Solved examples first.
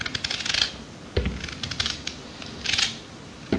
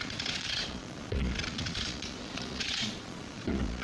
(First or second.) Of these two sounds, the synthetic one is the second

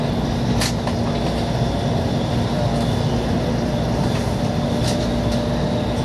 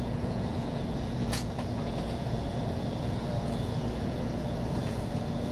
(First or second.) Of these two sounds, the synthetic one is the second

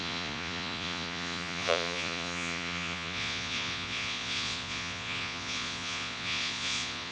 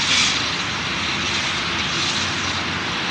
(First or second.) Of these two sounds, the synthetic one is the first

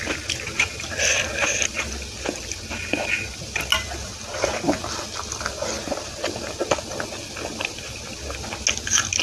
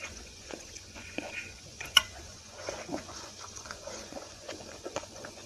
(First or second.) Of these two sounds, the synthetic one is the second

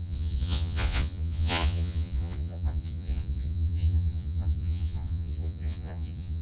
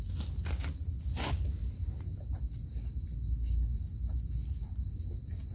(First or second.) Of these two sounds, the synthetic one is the first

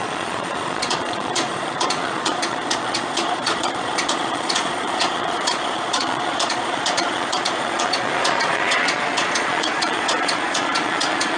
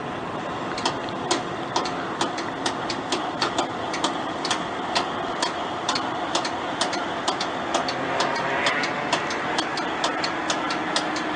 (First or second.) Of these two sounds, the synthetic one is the first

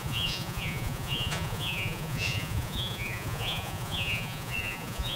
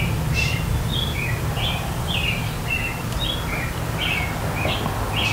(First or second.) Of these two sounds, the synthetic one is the first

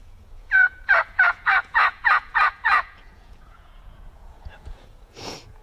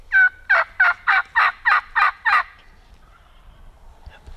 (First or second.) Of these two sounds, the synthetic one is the first